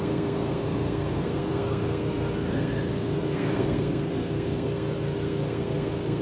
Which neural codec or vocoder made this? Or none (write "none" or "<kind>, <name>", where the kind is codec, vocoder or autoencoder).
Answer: codec, SNAC